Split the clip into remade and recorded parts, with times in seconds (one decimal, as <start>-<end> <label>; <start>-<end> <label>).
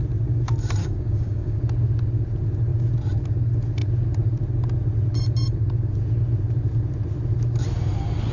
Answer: 0.0-0.8 recorded; 0.8-1.6 remade; 1.6-8.3 recorded